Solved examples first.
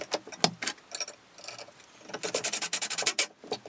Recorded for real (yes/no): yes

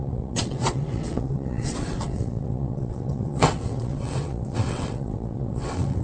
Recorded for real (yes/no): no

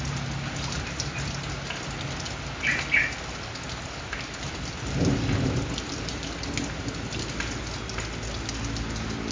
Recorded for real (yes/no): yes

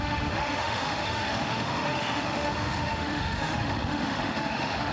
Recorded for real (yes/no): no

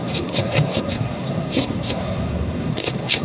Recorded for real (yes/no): no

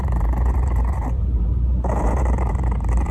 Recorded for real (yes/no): no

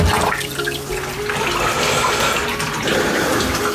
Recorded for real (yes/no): yes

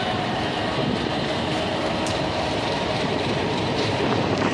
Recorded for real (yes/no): no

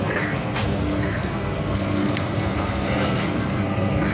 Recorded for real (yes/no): no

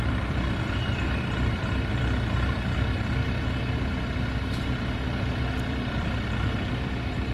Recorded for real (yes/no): no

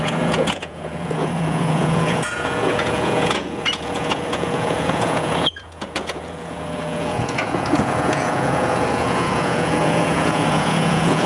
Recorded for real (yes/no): no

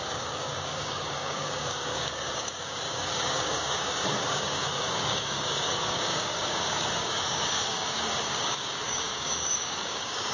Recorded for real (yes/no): no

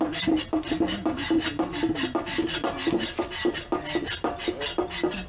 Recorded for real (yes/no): yes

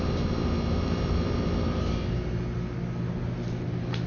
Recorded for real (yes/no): yes